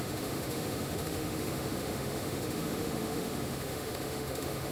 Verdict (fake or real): fake